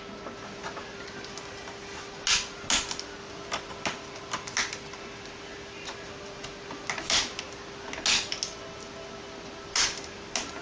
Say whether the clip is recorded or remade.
recorded